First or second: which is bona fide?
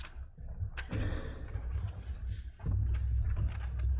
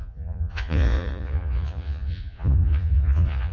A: first